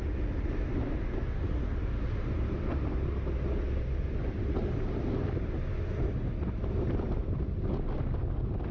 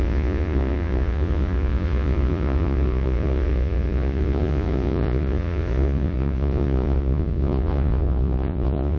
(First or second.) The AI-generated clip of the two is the second